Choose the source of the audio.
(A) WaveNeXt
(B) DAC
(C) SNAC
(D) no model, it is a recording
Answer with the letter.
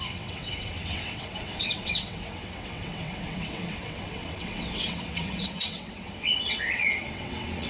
A